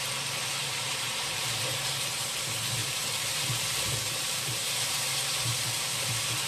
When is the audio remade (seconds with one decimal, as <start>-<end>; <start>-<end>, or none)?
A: 0.6-1.7; 2.8-5.9